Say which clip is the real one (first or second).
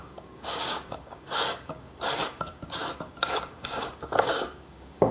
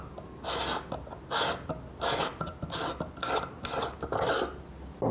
second